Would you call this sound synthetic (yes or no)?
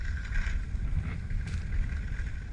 no